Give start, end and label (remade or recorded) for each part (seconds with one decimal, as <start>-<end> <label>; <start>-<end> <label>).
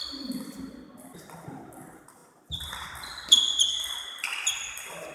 0.0-5.1 remade